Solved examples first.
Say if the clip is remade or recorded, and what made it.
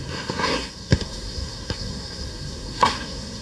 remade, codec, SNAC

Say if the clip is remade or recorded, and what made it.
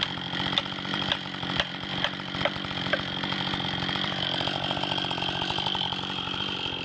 recorded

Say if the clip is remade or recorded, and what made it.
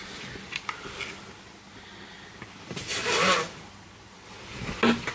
recorded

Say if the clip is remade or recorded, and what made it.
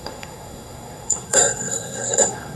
remade, codec, SNAC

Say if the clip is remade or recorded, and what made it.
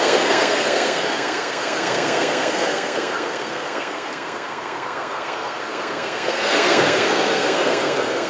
remade, codec, SNAC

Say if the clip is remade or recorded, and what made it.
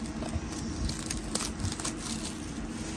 recorded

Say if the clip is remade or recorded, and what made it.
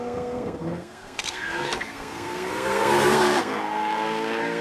remade, codec, SNAC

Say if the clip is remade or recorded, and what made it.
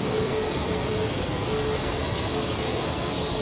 remade, codec, SNAC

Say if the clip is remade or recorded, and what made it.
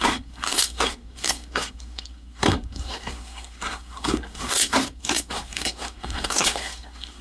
remade, codec, SNAC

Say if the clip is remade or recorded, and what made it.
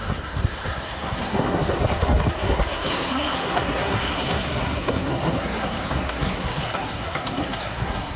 remade, codec, SNAC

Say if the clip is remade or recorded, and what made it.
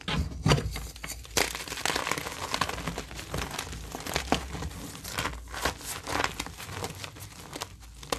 recorded